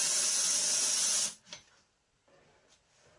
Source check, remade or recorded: recorded